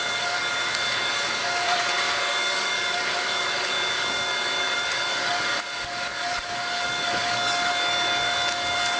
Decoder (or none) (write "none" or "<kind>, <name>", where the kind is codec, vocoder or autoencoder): codec, DAC